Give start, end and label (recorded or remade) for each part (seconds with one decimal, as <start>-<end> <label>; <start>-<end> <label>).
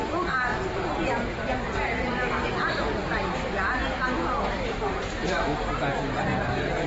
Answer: 0.0-0.5 remade; 0.5-1.5 recorded; 1.5-3.8 remade; 3.8-4.4 recorded; 4.4-5.5 remade; 5.5-6.2 recorded; 6.2-6.9 remade